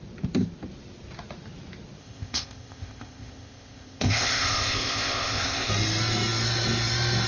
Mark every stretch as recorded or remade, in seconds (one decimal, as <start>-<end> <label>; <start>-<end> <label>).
0.0-2.0 recorded; 2.0-5.7 remade; 5.7-7.3 recorded